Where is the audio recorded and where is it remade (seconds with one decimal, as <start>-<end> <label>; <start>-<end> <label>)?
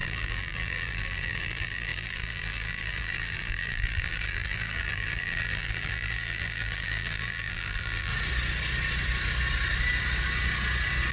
0.0-8.1 remade; 8.1-11.1 recorded